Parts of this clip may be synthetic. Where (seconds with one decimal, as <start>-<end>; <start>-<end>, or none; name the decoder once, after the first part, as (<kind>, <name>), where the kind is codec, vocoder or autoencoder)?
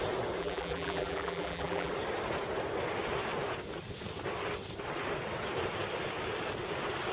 0.4-1.9 (vocoder, BigVGAN v2)